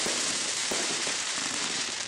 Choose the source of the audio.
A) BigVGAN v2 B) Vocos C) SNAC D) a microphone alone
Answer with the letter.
A